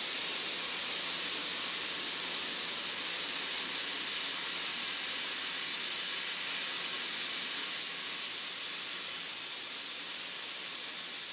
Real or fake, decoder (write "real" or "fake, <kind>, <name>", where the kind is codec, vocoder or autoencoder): real